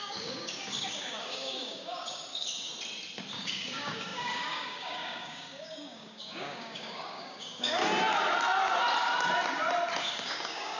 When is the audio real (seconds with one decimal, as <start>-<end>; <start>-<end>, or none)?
2.7-3.3; 7.8-10.0

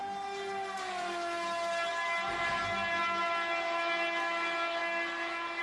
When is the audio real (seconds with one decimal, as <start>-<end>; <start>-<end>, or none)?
0.0-5.6

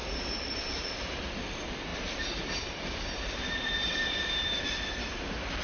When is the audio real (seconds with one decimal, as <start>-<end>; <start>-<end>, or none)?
0.9-1.9; 4.6-5.6

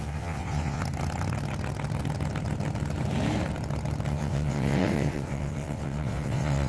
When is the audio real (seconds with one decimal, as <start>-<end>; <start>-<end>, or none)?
0.8-4.1

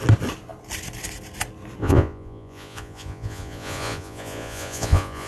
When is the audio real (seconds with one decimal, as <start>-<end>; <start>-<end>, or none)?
0.0-1.8

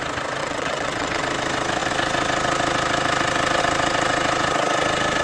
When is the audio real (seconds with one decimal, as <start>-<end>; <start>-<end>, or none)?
0.0-0.4; 1.2-5.2

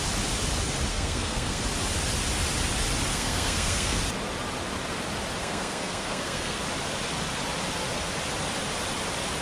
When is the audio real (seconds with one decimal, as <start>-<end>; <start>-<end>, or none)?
0.0-0.9; 1.6-3.1; 4.0-5.4; 6.6-9.4

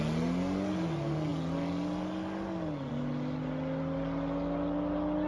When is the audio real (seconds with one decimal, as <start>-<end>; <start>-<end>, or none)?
0.0-5.3